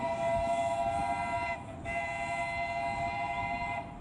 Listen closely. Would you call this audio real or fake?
real